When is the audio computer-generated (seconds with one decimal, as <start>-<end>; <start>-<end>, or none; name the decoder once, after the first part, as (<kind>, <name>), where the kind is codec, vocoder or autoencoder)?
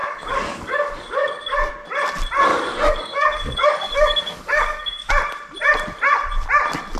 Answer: 0.0-1.7 (codec, DAC); 2.5-5.1